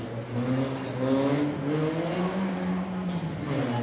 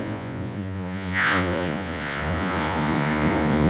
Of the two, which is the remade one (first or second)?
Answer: second